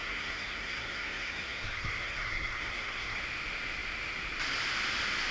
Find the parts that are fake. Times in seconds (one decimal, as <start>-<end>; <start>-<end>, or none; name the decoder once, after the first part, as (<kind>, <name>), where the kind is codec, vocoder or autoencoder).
0.0-3.2 (codec, SNAC)